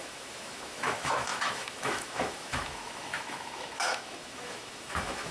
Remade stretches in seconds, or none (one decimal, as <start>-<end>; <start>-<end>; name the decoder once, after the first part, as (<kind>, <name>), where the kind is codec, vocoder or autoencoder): 0.0-5.3 (autoencoder, DAC-VAE)